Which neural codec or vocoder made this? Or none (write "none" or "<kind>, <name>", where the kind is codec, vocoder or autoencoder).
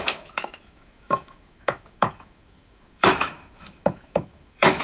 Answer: autoencoder, DAC-VAE